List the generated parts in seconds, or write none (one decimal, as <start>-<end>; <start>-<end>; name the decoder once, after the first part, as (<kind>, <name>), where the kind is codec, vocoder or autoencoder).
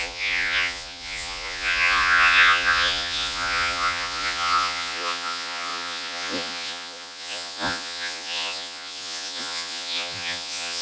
0.0-10.8 (vocoder, Vocos)